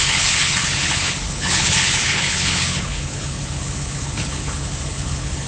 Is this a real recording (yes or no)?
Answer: no